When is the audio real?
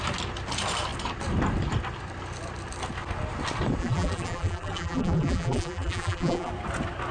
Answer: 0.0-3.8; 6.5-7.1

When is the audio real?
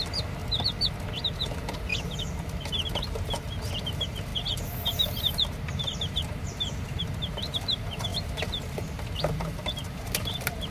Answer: 0.4-1.0; 1.9-3.8; 4.3-5.2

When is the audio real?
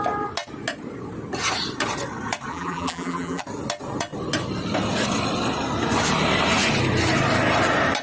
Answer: 0.0-2.5; 3.4-8.0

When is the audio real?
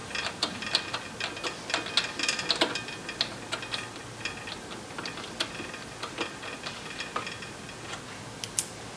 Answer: 0.0-9.0